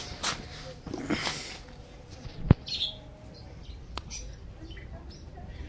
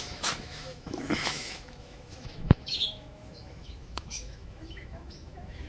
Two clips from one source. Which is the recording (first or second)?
first